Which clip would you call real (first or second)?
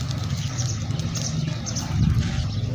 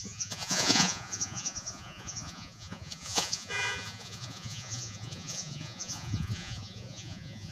first